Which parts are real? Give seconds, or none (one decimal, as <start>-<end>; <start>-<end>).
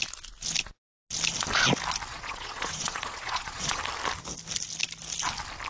0.0-2.1; 3.8-5.7